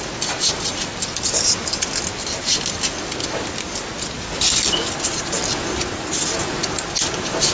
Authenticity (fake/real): real